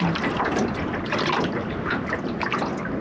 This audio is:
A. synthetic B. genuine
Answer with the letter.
B